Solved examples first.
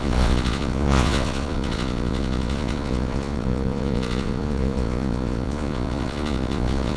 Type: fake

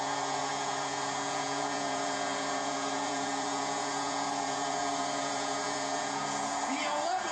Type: fake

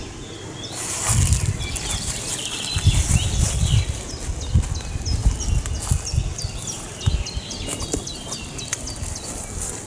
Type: real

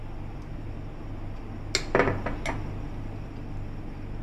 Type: real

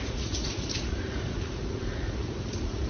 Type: fake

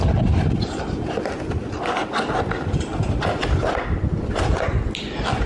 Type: real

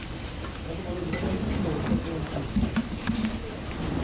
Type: real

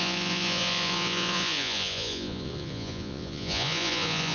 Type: fake